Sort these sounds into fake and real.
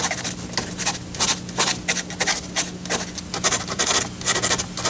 real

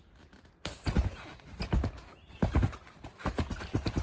real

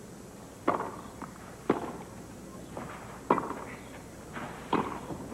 real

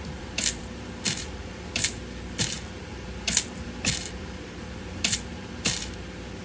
fake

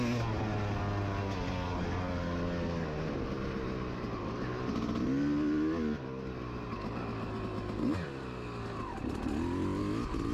real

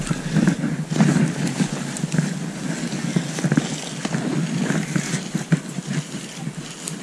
real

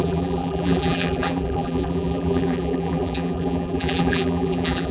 fake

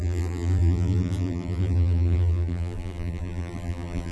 fake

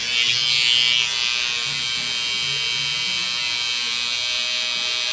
real